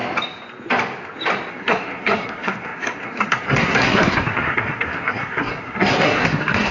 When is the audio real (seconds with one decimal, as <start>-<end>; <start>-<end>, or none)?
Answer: 0.0-1.5